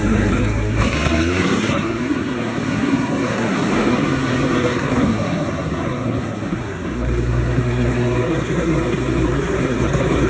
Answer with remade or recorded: remade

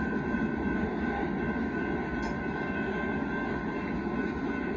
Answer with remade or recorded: recorded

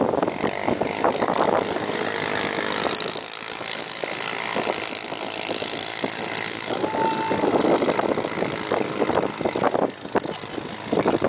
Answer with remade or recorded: recorded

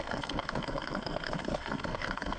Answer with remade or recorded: remade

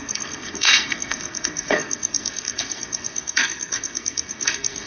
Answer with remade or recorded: remade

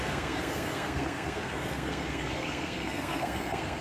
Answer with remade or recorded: remade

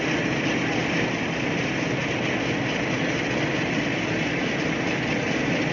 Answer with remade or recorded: recorded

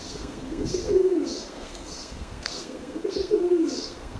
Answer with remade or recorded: remade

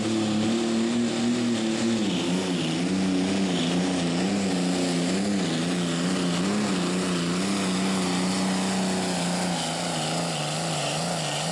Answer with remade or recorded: recorded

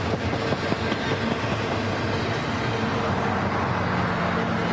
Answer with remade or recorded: recorded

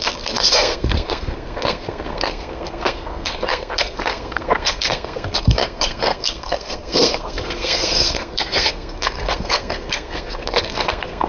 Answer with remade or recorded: remade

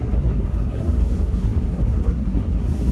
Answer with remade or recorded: remade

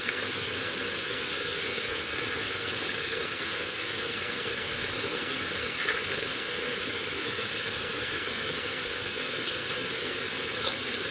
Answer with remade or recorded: remade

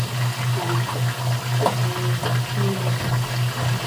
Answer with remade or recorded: recorded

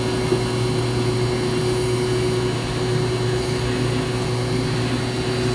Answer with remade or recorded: recorded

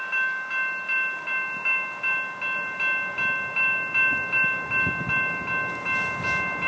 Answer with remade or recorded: recorded